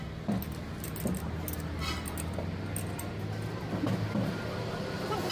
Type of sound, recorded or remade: recorded